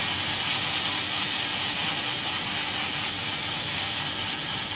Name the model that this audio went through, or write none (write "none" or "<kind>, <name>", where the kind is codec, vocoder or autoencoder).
none